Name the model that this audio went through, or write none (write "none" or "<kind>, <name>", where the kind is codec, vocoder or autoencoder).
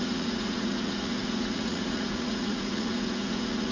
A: vocoder, Vocos